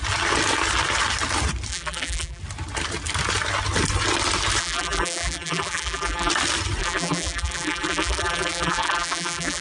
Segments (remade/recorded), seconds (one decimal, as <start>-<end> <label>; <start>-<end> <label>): 0.0-1.7 recorded; 1.7-2.4 remade; 2.4-4.6 recorded; 4.6-6.3 remade; 6.3-6.8 recorded; 6.8-9.6 remade